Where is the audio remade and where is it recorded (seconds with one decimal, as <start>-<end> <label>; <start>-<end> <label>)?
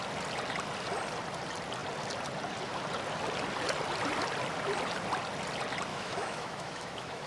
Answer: 0.0-5.9 recorded; 5.9-7.3 remade